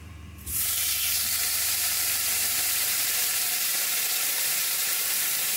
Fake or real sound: fake